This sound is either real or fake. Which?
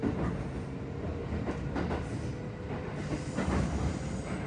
real